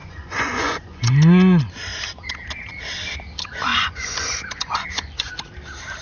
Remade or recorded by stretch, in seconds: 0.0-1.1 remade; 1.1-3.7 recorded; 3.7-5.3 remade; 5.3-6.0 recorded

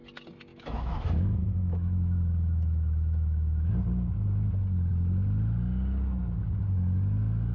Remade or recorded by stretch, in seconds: 0.0-0.5 recorded; 0.5-3.7 remade; 3.7-7.5 recorded

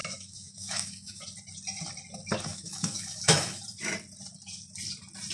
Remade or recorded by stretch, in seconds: 0.0-1.2 remade; 1.2-2.5 recorded; 2.5-3.6 remade; 3.6-5.3 recorded

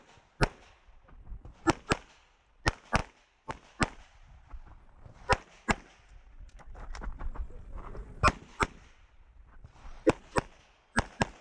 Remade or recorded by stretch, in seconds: 0.0-11.4 recorded

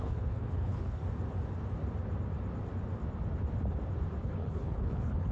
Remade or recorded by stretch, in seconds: 0.0-1.0 remade; 1.0-4.2 recorded; 4.2-5.3 remade

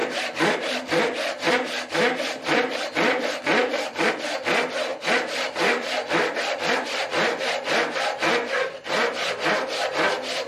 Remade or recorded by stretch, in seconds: 0.0-4.1 remade; 4.1-4.9 recorded; 4.9-6.2 remade; 6.2-10.5 recorded

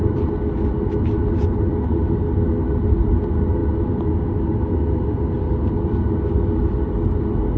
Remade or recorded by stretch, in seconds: 0.0-7.6 recorded

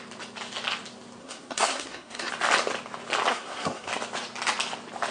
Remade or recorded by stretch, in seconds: 0.0-1.2 recorded; 1.2-2.3 remade; 2.3-3.3 recorded; 3.3-3.9 remade; 3.9-5.1 recorded